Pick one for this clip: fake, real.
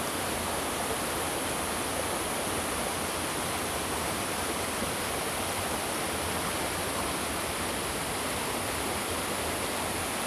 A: real